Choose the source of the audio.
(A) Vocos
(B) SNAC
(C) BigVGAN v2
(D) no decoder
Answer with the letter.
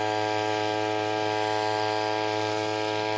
D